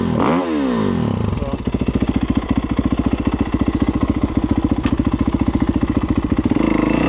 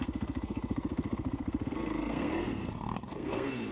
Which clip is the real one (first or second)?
first